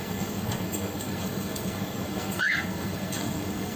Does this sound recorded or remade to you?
remade